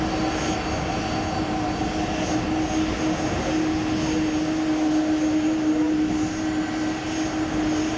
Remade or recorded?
recorded